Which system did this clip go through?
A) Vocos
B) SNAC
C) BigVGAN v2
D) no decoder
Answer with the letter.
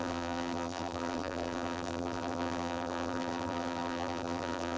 C